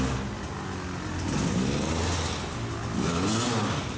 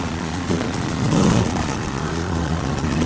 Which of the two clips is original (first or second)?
first